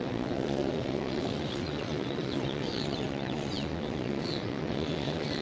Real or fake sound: fake